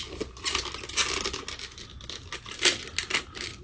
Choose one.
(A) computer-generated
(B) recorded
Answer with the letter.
B